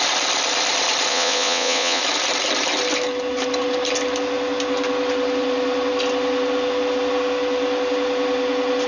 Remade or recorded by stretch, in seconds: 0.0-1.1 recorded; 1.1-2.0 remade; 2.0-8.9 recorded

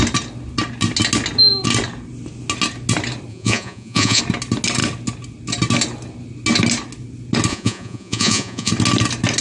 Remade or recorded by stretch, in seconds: 0.0-3.3 recorded; 3.3-4.2 remade; 4.2-7.5 recorded; 7.5-8.7 remade; 8.7-9.4 recorded

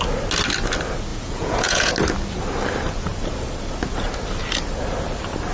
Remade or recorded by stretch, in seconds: 0.0-1.1 recorded; 1.1-1.9 remade; 1.9-5.5 recorded